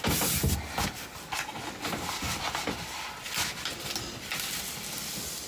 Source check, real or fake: real